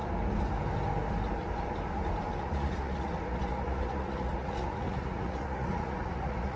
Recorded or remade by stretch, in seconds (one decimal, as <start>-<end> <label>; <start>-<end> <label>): 0.0-2.4 recorded; 2.4-6.6 remade